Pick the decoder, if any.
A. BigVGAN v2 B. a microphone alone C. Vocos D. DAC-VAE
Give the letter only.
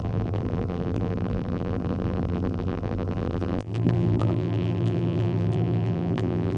A